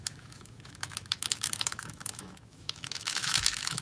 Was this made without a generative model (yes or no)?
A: no